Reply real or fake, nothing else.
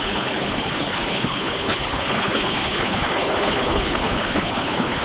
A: fake